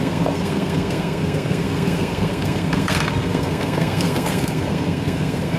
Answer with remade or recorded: remade